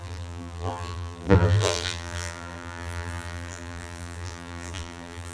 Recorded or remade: remade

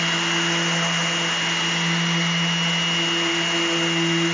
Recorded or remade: recorded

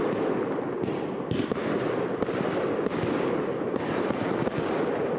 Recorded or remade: remade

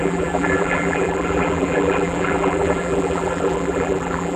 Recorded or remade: remade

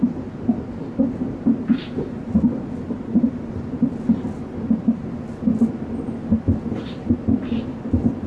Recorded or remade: recorded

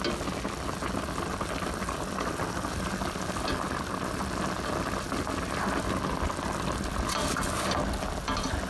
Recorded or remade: recorded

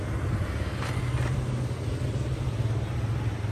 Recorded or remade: recorded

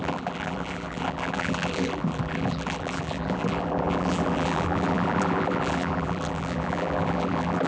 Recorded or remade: remade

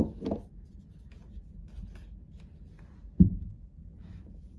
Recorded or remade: recorded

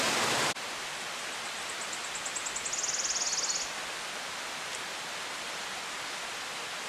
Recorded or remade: recorded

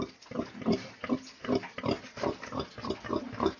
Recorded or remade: recorded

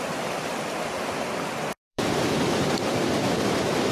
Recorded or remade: remade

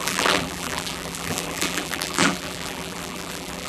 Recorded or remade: remade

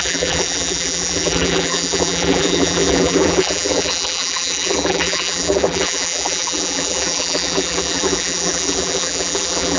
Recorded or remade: remade